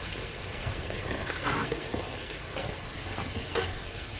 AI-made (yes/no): yes